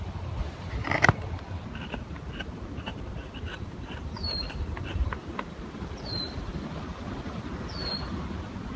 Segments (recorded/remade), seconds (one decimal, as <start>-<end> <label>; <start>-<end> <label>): 0.0-2.9 recorded; 2.9-6.3 remade; 6.3-8.8 recorded